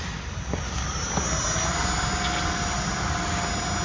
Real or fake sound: real